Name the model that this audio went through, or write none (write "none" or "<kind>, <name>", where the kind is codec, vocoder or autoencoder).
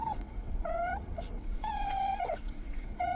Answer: vocoder, WaveNeXt